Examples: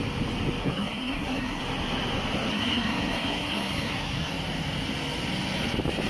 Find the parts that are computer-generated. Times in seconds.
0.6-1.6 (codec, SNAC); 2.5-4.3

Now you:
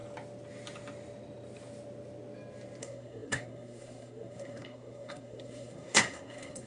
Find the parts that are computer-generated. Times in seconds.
2.8-6.7 (codec, SNAC)

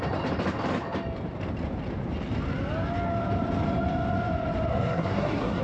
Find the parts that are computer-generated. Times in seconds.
4.7-5.6 (codec, SNAC)